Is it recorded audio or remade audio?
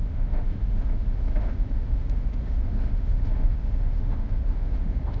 remade